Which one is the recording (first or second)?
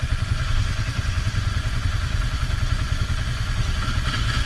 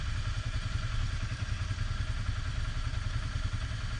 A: second